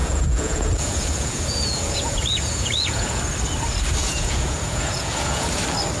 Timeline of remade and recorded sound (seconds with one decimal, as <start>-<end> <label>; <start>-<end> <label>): 0.0-3.2 remade; 3.2-4.0 recorded; 4.0-5.6 remade; 5.6-6.0 recorded